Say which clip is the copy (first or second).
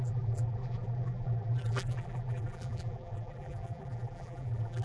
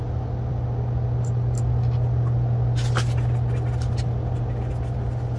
first